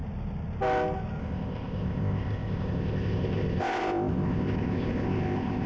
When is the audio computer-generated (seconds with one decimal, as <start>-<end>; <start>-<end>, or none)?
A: 1.2-5.7